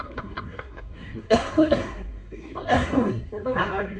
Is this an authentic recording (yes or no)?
no